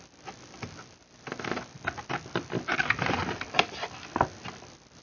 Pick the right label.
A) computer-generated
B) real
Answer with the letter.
B